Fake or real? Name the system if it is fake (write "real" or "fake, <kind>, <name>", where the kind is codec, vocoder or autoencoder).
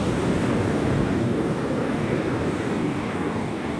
fake, codec, DAC